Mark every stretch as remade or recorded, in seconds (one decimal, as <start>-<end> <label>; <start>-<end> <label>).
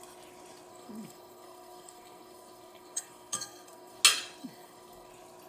0.0-0.7 recorded; 0.7-4.0 remade; 4.0-4.4 recorded; 4.4-5.1 remade; 5.1-5.5 recorded